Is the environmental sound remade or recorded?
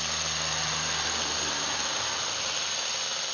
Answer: recorded